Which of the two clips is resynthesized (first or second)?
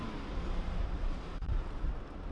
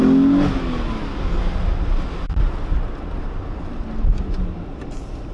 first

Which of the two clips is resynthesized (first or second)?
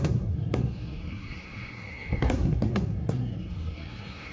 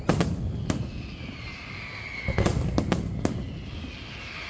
first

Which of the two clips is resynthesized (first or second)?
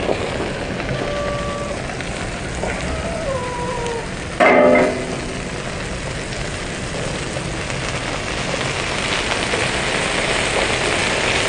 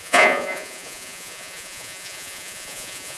second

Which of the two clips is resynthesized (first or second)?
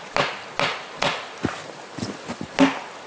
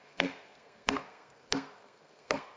second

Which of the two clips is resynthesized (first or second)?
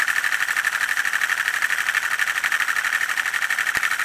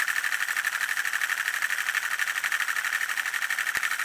first